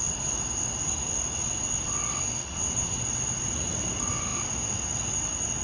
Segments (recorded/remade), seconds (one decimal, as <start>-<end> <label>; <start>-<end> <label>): 0.0-2.4 recorded; 2.4-3.0 remade; 3.0-5.6 recorded